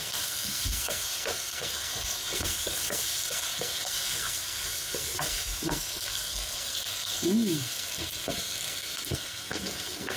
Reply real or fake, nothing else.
fake